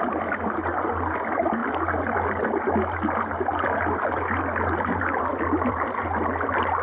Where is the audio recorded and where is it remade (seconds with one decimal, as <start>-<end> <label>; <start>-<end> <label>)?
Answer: 0.0-1.6 recorded; 1.6-2.4 remade; 2.4-5.3 recorded; 5.3-6.0 remade; 6.0-6.8 recorded